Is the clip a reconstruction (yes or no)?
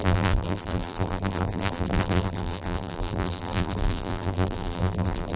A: yes